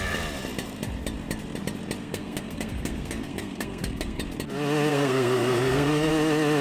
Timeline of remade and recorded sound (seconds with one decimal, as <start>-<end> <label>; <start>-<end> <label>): 0.0-2.0 recorded; 2.0-4.2 remade; 4.2-4.9 recorded; 4.9-6.1 remade; 6.1-6.6 recorded